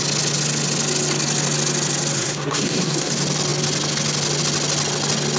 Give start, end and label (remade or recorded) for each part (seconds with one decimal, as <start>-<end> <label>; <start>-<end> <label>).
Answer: 0.0-2.2 recorded; 2.2-3.1 remade; 3.1-5.4 recorded